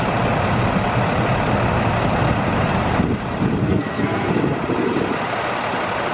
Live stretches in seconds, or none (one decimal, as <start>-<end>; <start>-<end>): 0.0-3.6; 4.3-6.1